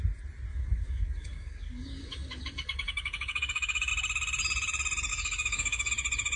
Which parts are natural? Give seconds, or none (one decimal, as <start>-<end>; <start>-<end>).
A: 0.0-0.5; 3.9-5.1; 5.9-6.4